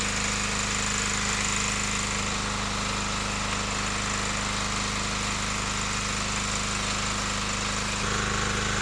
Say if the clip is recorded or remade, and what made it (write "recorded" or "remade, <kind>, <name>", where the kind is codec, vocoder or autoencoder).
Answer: recorded